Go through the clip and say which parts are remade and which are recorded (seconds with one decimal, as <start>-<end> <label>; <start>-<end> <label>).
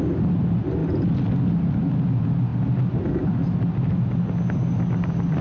0.0-5.4 recorded